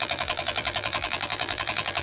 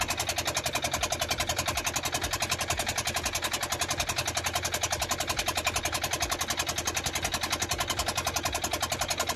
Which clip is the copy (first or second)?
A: first